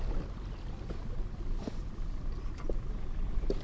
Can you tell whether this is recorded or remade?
recorded